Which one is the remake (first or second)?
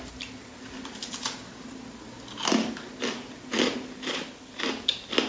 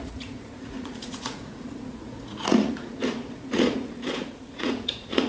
second